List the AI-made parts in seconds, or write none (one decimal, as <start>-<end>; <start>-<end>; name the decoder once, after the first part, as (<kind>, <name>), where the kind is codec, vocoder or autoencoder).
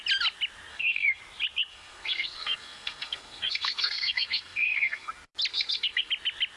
0.7-1.2 (codec, SNAC); 1.7-5.1; 5.5-6.1